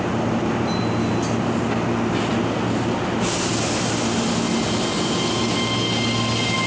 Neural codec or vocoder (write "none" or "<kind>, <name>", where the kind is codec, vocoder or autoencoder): none